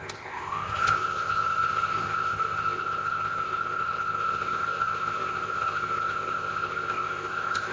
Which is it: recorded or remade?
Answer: remade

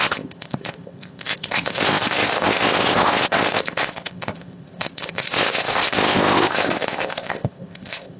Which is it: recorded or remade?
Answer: remade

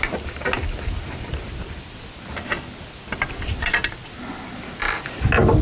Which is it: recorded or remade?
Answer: recorded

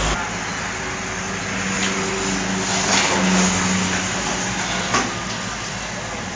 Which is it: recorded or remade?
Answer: recorded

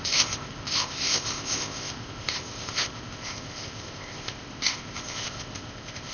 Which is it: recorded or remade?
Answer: remade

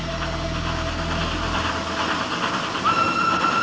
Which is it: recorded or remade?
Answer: recorded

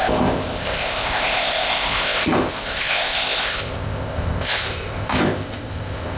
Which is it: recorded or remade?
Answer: remade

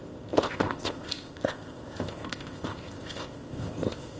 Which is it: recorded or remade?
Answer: remade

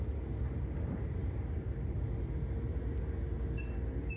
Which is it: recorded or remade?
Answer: recorded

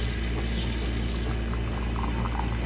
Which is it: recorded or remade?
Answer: recorded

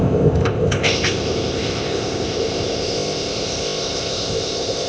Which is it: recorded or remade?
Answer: remade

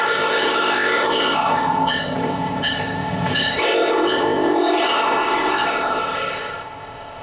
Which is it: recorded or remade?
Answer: remade